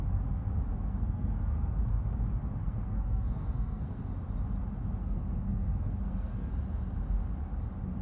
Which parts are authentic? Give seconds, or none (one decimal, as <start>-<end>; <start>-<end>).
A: 0.0-0.7; 1.8-2.6; 4.0-5.0; 6.5-8.0